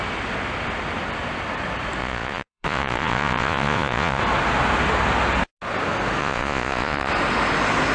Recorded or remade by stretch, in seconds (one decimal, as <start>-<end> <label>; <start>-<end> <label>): 0.0-2.0 recorded; 2.0-4.2 remade; 4.2-6.2 recorded; 6.2-7.1 remade; 7.1-7.9 recorded